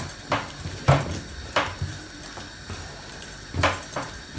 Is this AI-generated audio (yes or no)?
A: yes